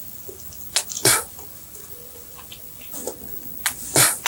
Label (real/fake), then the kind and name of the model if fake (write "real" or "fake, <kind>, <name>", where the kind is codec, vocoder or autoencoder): real